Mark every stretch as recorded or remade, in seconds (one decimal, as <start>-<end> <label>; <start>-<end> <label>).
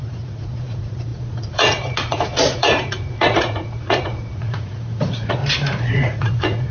0.0-5.4 remade; 5.4-5.9 recorded; 5.9-6.7 remade